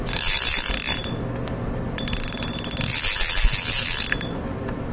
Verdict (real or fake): real